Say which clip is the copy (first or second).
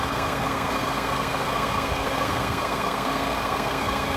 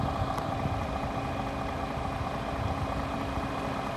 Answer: first